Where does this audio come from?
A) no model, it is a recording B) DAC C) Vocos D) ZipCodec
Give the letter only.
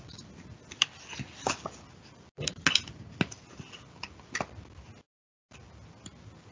A